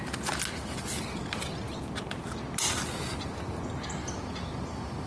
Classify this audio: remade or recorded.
recorded